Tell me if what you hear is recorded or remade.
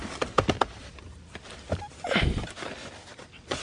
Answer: recorded